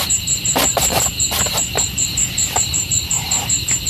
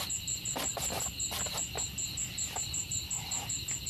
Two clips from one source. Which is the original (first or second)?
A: second